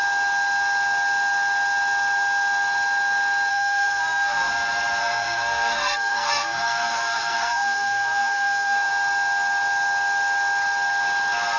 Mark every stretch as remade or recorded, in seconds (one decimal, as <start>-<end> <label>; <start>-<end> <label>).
0.0-3.5 recorded; 3.5-4.5 remade; 4.5-5.0 recorded; 5.0-8.9 remade; 8.9-11.6 recorded